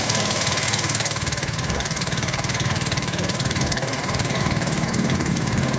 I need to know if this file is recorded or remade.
remade